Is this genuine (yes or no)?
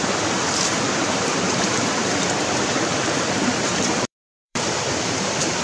no